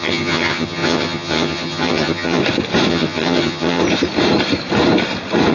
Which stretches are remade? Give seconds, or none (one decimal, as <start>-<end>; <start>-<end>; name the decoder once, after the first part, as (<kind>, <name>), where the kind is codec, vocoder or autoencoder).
0.0-2.4 (vocoder, HiFi-GAN); 2.9-3.8